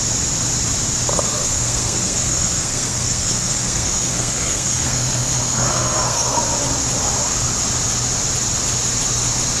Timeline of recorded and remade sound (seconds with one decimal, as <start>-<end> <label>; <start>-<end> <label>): 0.0-1.3 recorded; 1.3-6.4 remade; 6.4-9.6 recorded